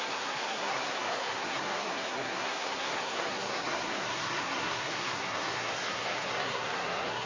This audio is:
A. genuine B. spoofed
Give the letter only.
B